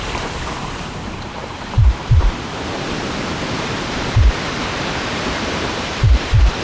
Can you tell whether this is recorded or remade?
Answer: remade